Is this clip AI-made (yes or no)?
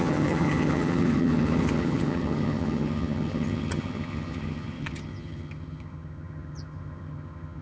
yes